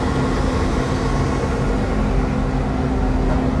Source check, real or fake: real